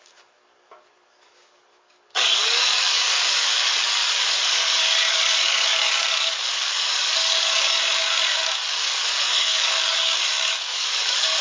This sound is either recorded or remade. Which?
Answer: remade